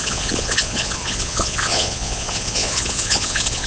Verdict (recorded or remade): remade